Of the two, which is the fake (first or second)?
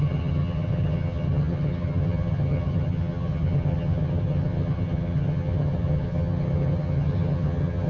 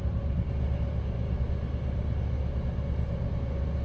first